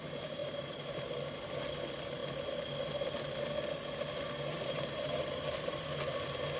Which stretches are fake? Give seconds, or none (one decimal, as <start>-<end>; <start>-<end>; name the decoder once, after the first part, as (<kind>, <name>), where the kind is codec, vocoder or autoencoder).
0.4-1.0 (vocoder, BigVGAN v2); 4.5-5.9